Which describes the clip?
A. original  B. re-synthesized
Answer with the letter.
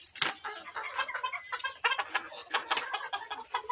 A